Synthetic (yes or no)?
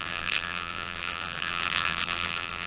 yes